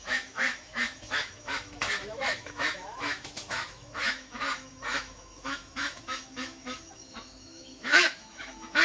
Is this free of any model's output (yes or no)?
no